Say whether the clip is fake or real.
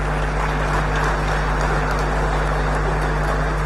real